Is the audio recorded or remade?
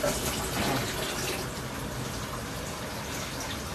recorded